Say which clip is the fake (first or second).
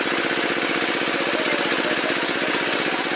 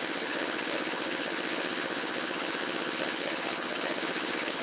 second